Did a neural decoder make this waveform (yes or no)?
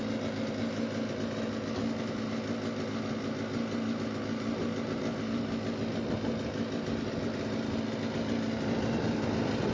no